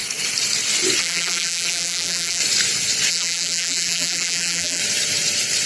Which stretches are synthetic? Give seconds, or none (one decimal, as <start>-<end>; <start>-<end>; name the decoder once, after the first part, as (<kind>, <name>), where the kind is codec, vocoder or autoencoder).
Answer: 1.0-2.4 (vocoder, BigVGAN v2); 3.1-4.8